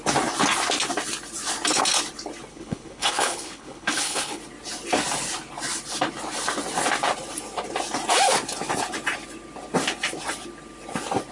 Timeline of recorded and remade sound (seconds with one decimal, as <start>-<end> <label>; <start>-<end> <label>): 0.0-2.5 recorded; 2.5-4.4 remade; 4.4-11.3 recorded